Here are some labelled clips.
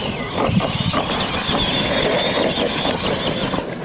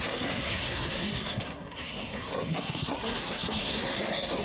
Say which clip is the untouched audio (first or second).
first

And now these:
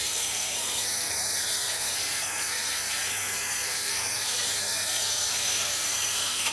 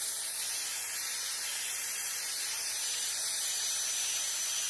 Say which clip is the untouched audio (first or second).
second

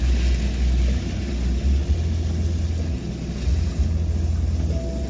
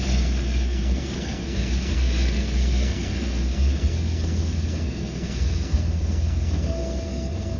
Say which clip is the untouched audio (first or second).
first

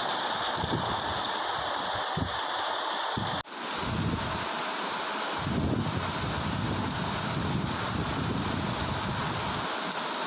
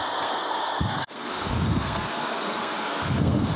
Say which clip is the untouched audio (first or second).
first